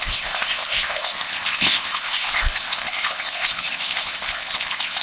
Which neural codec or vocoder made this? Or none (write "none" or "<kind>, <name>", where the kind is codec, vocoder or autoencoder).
codec, ZipCodec